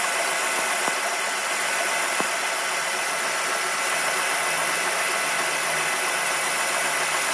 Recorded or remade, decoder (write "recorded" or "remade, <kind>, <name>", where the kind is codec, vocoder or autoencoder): recorded